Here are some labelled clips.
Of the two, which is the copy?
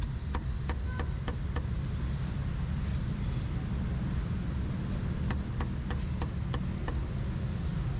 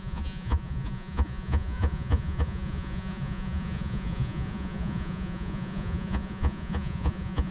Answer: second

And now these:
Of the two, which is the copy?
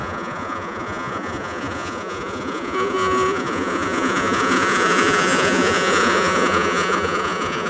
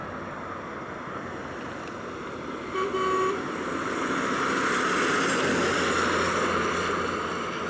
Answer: first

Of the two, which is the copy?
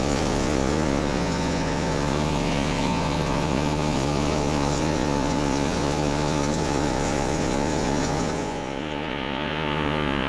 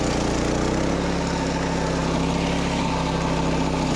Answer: first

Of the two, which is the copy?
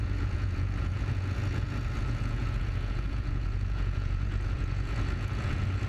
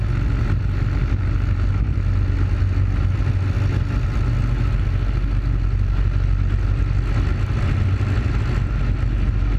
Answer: first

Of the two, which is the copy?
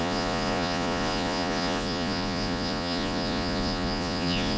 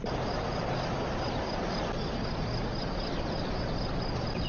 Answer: first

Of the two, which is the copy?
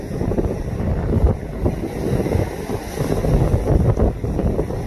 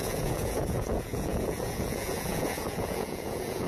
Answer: second